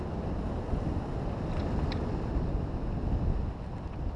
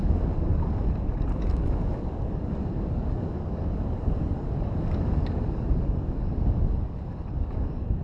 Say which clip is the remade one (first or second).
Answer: second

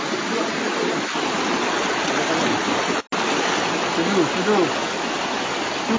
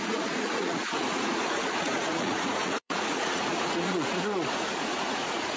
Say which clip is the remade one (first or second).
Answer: second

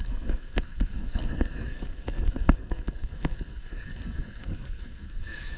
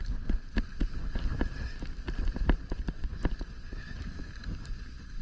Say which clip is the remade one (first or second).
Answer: first